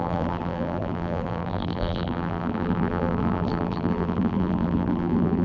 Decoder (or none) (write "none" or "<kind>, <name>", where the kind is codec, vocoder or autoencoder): vocoder, BigVGAN v2